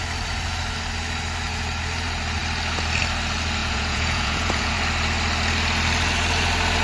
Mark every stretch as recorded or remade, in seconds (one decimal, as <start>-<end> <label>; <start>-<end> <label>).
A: 0.0-3.6 recorded; 3.6-4.8 remade; 4.8-6.8 recorded